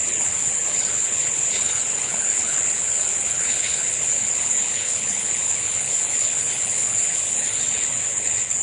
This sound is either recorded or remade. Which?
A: remade